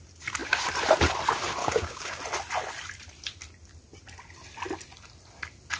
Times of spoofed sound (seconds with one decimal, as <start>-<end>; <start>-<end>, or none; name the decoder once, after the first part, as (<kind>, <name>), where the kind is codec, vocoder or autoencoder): 1.6-2.2 (codec, DAC)